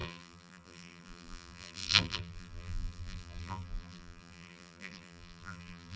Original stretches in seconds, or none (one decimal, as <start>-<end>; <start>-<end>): none